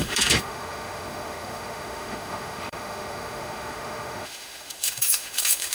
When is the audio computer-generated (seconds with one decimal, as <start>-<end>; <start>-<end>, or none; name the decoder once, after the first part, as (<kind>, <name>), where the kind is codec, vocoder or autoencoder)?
0.0-5.7 (autoencoder, DAC-VAE)

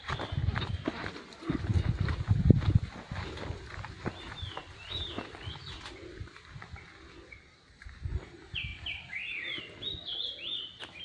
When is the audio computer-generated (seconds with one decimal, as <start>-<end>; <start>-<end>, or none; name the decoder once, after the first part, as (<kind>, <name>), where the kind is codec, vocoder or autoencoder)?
4.6-5.6 (vocoder, BigVGAN v2); 8.7-9.6

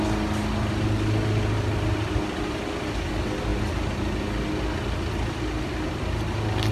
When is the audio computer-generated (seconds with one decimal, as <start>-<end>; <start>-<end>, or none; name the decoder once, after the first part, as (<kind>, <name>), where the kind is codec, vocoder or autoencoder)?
none

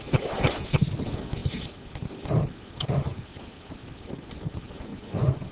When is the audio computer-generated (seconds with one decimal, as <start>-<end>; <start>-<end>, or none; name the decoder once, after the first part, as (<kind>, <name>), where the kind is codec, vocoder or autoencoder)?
4.9-5.5 (vocoder, Vocos)

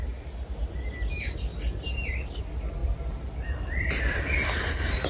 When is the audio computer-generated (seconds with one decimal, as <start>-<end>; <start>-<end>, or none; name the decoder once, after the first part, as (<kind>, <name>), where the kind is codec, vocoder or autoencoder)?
none

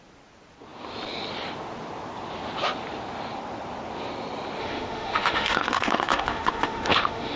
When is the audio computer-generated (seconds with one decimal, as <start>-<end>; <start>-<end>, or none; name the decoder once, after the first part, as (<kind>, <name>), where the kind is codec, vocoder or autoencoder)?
4.6-7.4 (autoencoder, DAC-VAE)

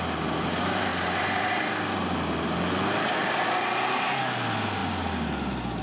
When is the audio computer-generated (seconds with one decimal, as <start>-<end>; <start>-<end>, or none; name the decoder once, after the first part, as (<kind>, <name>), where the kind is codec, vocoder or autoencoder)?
0.9-1.7 (vocoder, BigVGAN v2)